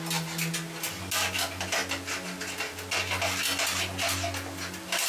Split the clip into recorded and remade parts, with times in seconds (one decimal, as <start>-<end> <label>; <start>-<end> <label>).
0.0-5.1 recorded